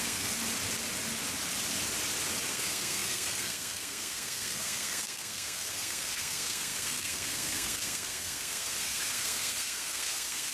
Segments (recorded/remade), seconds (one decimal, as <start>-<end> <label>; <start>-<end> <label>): 0.0-0.4 remade; 0.4-2.5 recorded; 2.5-10.5 remade